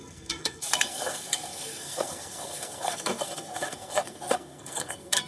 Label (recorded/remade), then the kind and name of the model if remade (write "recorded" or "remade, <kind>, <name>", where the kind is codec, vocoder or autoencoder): remade, codec, SNAC